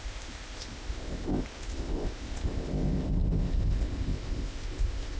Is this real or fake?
fake